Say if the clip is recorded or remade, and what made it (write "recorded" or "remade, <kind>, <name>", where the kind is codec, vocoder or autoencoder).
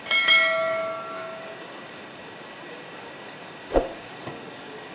remade, codec, DAC